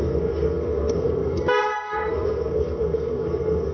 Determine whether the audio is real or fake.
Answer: fake